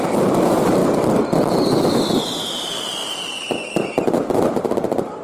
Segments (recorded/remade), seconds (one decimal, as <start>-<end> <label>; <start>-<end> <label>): 0.0-0.8 remade; 0.8-2.2 recorded; 2.2-3.0 remade; 3.0-3.9 recorded; 3.9-5.2 remade